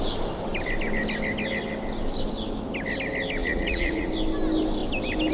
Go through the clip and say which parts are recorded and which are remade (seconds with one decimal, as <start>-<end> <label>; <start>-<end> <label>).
0.0-3.4 recorded; 3.4-4.1 remade; 4.1-5.3 recorded